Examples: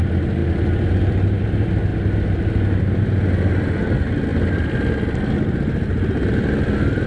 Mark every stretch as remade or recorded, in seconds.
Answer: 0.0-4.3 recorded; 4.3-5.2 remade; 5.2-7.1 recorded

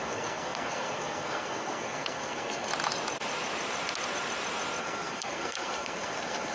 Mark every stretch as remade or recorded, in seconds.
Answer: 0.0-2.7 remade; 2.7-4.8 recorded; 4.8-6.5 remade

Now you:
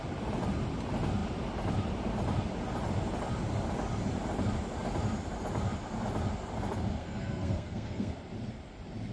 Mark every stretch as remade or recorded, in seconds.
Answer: 0.0-7.0 recorded; 7.0-8.1 remade; 8.1-9.1 recorded